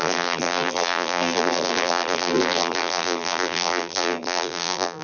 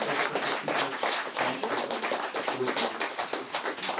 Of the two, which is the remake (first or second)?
first